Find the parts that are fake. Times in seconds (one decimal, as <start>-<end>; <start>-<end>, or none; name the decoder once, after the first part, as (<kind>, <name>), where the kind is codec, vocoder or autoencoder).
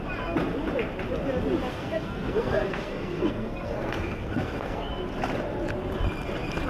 1.7-4.9 (codec, SNAC)